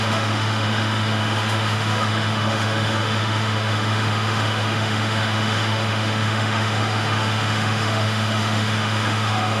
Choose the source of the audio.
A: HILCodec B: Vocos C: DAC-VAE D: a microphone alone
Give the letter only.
C